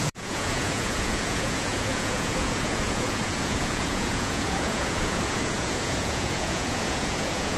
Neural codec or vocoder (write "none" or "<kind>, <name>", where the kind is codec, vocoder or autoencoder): vocoder, Vocos